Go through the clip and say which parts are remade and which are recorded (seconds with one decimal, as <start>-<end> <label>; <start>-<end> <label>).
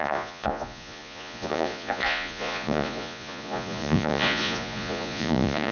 0.0-5.7 remade